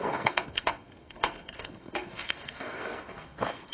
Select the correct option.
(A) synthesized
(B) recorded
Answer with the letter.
A